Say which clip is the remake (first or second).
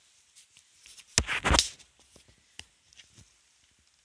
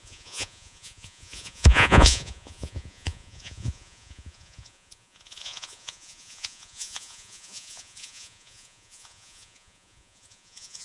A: second